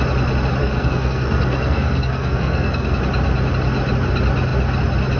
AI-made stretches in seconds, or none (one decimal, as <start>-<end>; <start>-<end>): 0.6-3.0